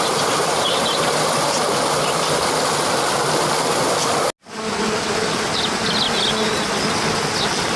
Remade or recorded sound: recorded